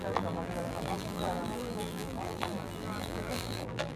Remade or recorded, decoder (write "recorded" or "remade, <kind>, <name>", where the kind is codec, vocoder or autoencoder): remade, vocoder, BigVGAN v2